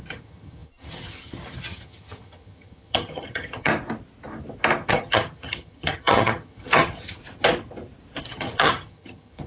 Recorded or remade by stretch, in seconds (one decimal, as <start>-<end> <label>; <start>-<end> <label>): 0.0-3.7 remade; 3.7-4.9 recorded; 4.9-7.2 remade; 7.2-8.2 recorded; 8.2-9.5 remade